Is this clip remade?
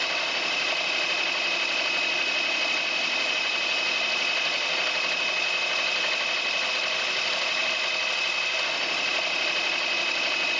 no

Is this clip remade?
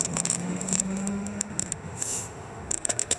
yes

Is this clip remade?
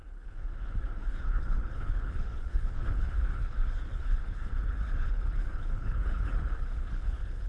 yes